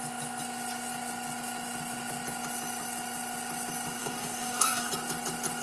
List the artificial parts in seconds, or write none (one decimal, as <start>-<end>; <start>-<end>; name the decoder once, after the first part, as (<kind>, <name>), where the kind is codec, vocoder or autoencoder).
4.0-4.9 (codec, DAC)